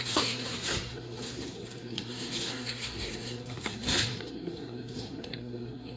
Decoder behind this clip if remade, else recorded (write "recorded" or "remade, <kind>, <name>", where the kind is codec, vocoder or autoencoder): remade, codec, SNAC